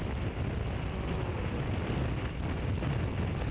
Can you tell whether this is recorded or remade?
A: recorded